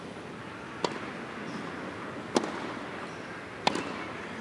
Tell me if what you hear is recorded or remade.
recorded